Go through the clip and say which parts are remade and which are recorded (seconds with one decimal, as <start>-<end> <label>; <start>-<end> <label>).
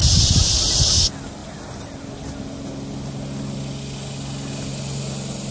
0.0-5.5 recorded